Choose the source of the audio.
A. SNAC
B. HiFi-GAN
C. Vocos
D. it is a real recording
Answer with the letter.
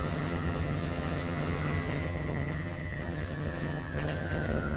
B